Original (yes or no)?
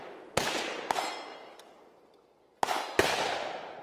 yes